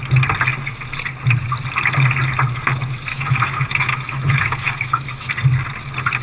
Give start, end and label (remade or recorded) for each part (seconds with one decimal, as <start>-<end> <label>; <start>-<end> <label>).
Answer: 0.0-3.1 recorded; 3.1-5.3 remade; 5.3-6.2 recorded

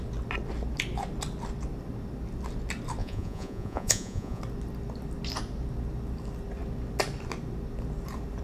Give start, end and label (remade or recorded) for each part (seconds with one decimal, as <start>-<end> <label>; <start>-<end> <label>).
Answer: 0.0-3.0 recorded; 3.0-4.4 remade; 4.4-8.4 recorded

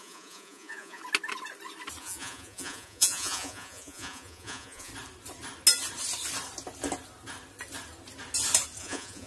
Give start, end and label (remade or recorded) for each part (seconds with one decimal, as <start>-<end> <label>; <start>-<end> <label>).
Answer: 0.0-1.0 remade; 1.0-2.0 recorded; 2.0-4.9 remade; 4.9-8.8 recorded; 8.8-9.3 remade

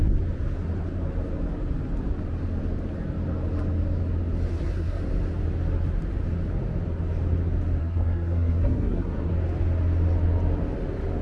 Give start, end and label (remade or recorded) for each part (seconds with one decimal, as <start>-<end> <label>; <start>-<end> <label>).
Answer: 0.0-4.5 recorded; 4.5-5.0 remade; 5.0-7.8 recorded; 7.8-9.3 remade; 9.3-11.2 recorded

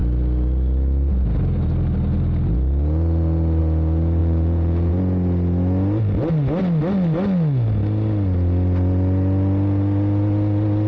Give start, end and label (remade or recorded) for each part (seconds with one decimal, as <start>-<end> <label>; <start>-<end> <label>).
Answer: 0.0-4.2 recorded; 4.2-4.9 remade; 4.9-10.9 recorded